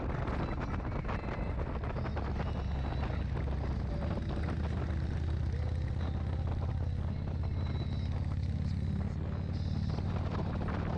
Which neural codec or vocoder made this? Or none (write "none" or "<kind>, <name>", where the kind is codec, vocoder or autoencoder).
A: none